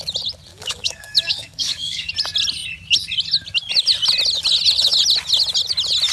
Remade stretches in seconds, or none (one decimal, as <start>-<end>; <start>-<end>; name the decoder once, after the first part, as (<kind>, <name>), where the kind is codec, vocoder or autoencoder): 0.5-2.1 (codec, DAC)